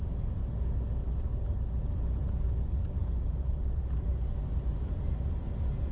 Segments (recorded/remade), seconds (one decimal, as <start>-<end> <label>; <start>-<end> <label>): 0.0-3.0 recorded; 3.0-5.4 remade; 5.4-5.9 recorded